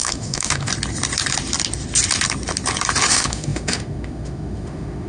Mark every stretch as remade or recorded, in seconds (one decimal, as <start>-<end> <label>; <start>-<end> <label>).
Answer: 0.0-0.7 remade; 0.7-3.1 recorded; 3.1-5.1 remade